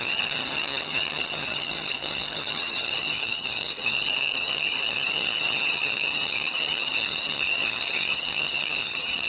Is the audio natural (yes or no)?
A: no